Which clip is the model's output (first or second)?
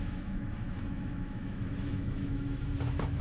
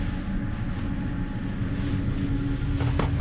first